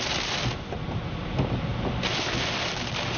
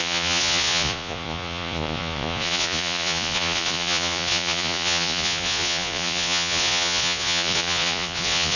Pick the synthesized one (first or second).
second